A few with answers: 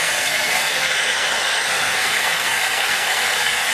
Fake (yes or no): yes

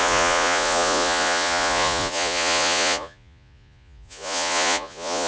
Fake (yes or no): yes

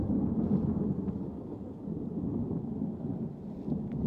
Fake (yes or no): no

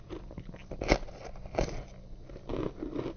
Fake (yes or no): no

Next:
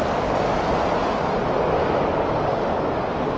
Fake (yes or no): no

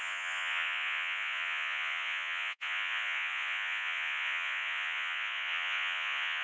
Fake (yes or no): yes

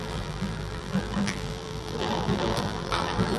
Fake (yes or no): yes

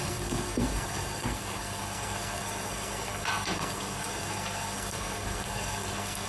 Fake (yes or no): yes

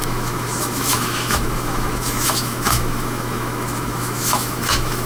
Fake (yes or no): yes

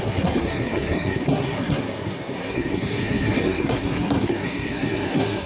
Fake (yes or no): yes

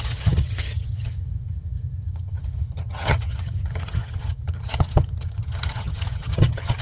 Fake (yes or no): yes